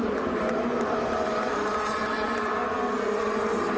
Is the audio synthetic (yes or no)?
yes